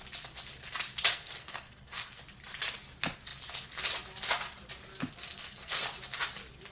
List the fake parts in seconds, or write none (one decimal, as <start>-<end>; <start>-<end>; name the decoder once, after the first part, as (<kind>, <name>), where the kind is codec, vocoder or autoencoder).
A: 1.1-2.2 (codec, SNAC); 5.2-5.8